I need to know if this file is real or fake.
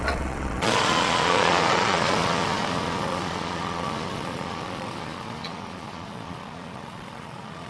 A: fake